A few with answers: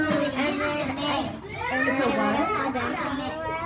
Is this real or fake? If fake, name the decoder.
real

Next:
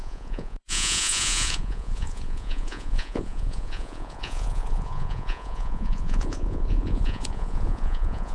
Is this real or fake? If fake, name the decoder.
fake, vocoder, Vocos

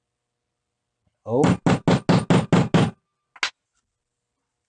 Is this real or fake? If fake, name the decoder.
real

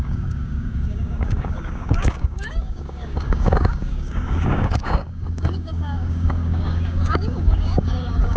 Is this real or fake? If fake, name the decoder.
fake, codec, DAC